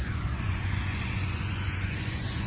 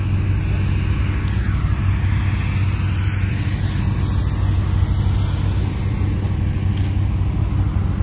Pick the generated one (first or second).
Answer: first